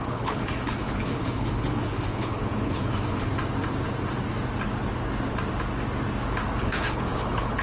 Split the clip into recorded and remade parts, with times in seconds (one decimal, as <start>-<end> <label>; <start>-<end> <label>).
0.0-3.3 remade; 3.3-6.6 recorded; 6.6-7.6 remade